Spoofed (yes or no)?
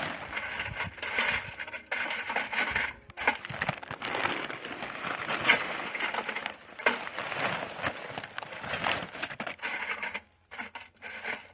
no